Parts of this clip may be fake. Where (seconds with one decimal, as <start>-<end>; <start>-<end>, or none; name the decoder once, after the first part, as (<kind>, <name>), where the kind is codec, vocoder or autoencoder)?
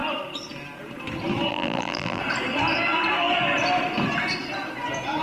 1.5-2.2 (vocoder, BigVGAN v2)